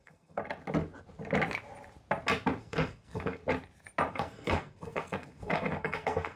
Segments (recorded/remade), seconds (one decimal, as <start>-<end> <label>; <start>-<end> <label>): 0.0-0.4 remade; 0.4-2.6 recorded; 2.6-3.4 remade; 3.4-4.1 recorded; 4.1-6.4 remade